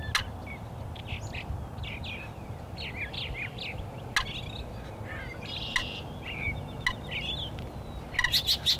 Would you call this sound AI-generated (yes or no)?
no